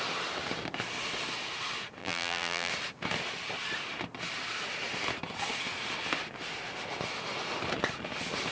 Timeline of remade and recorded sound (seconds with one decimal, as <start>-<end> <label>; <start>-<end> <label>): 0.0-2.0 recorded; 2.0-2.7 remade; 2.7-8.5 recorded